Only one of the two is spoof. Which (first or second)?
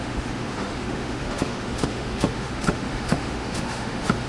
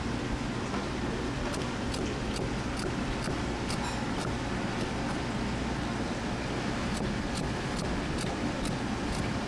first